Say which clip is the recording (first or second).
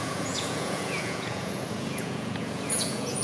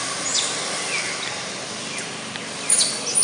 second